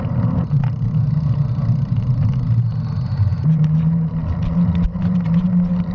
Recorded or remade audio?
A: recorded